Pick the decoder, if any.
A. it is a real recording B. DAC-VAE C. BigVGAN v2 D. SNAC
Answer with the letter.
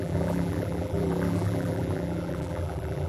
C